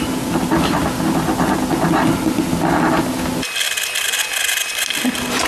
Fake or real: real